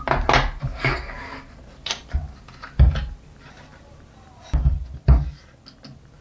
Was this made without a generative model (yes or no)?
yes